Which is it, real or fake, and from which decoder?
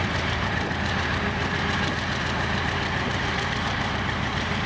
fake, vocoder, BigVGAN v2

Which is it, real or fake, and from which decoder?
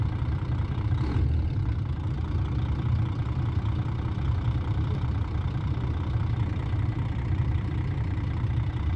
fake, vocoder, BigVGAN v2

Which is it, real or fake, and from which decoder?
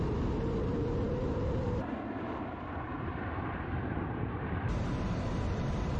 fake, vocoder, BigVGAN v2